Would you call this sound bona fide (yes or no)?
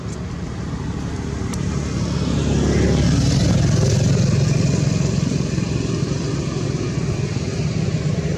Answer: yes